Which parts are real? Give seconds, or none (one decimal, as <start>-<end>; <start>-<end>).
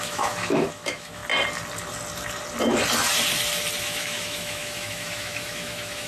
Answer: 1.2-3.8